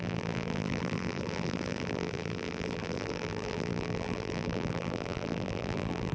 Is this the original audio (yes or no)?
no